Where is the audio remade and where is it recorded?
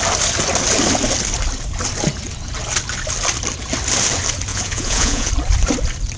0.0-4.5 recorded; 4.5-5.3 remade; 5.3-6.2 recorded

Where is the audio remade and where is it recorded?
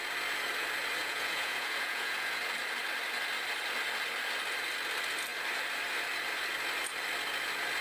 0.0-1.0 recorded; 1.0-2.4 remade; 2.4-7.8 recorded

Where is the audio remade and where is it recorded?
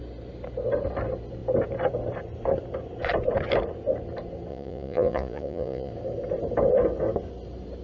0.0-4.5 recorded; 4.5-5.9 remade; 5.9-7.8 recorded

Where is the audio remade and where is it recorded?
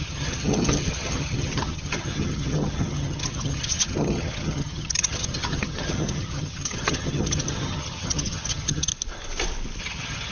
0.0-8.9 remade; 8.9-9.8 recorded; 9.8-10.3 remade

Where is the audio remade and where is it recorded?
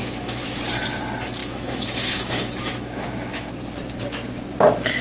0.0-0.6 remade; 0.6-1.4 recorded; 1.4-3.5 remade; 3.5-5.0 recorded